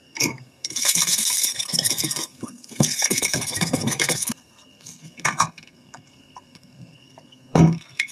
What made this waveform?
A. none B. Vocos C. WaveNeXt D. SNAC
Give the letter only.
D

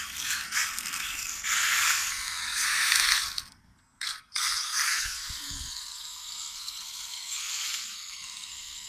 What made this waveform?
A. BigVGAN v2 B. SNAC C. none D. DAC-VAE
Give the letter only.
B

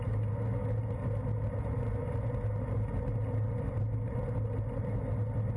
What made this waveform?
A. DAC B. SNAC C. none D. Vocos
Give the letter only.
C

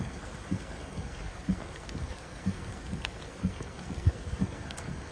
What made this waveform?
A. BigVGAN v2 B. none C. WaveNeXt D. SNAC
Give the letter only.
D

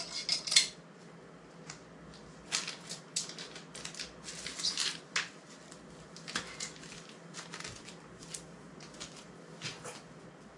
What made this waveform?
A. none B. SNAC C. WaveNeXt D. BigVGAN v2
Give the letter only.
A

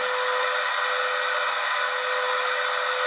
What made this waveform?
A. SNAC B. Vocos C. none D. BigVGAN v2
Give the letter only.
C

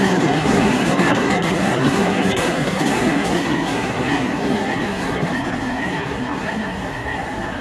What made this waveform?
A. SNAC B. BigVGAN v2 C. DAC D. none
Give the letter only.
A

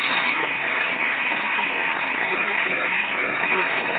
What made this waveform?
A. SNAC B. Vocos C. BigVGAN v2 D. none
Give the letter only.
A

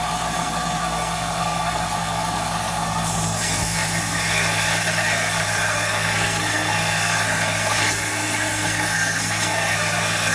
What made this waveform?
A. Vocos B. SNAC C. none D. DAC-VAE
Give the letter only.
B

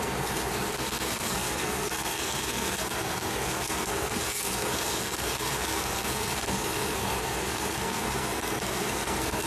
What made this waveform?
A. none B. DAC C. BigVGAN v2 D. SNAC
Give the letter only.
D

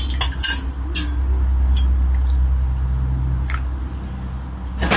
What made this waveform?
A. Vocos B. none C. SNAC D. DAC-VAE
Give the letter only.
B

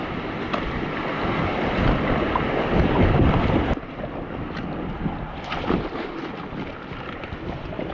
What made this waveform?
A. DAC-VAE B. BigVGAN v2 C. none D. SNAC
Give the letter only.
C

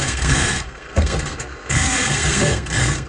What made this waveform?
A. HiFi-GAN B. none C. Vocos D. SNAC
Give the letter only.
D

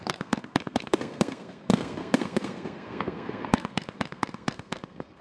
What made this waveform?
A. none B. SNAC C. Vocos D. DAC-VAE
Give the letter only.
B